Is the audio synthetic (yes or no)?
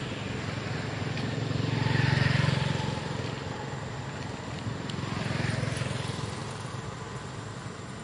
no